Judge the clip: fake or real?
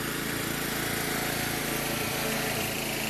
fake